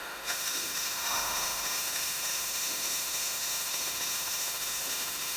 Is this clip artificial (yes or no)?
yes